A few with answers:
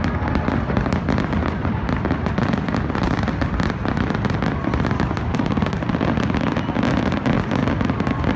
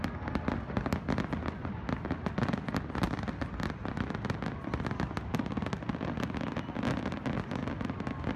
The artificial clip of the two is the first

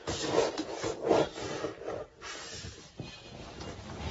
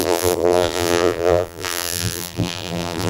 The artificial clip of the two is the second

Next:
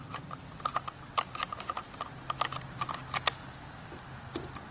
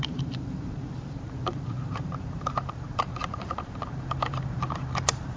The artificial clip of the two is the second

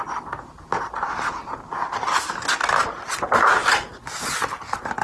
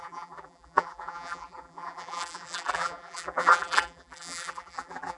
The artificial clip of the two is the second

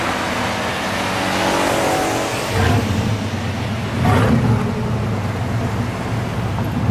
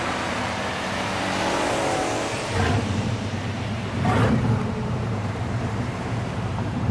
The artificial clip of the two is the second